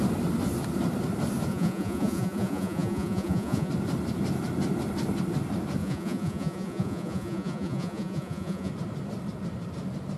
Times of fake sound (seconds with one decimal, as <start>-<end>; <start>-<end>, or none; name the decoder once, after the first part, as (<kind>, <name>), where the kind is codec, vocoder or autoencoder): 1.5-3.7 (vocoder, Vocos); 5.8-8.7